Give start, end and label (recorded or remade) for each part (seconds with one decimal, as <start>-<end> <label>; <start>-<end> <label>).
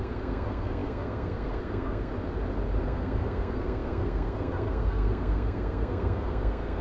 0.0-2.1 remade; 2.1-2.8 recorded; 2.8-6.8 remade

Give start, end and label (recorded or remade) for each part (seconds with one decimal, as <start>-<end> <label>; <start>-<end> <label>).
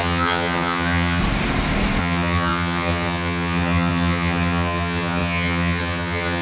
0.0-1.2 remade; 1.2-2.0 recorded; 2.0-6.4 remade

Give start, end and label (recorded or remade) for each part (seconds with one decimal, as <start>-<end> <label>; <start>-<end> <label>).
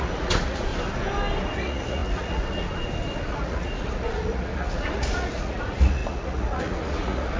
0.0-0.7 remade; 0.7-1.4 recorded; 1.4-7.4 remade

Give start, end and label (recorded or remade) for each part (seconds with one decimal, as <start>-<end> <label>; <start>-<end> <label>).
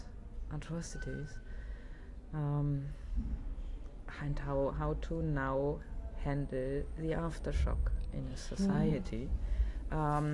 0.0-8.3 recorded; 8.3-9.6 remade; 9.6-10.3 recorded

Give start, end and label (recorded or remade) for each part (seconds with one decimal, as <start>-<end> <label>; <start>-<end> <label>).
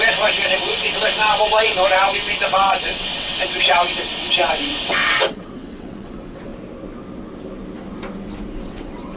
0.0-6.5 remade; 6.5-8.6 recorded; 8.6-9.2 remade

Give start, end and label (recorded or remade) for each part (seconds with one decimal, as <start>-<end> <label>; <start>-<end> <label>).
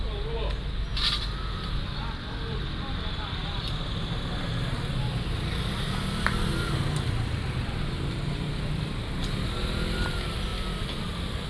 0.0-11.5 recorded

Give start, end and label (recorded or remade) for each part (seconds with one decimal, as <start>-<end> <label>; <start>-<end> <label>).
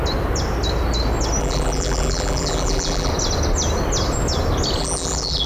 0.0-1.4 recorded; 1.4-3.1 remade; 3.1-4.8 recorded; 4.8-5.5 remade